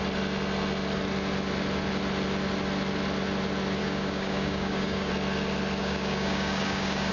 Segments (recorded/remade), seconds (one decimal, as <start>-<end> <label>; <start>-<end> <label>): 0.0-3.8 recorded; 3.8-5.1 remade; 5.1-5.8 recorded; 5.8-7.1 remade